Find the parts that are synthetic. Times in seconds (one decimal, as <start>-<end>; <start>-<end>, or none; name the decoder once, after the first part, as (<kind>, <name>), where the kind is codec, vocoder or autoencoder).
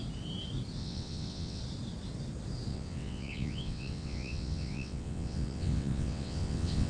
0.8-1.6 (vocoder, WaveNeXt); 2.7-6.9